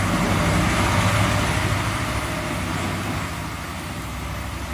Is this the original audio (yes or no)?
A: yes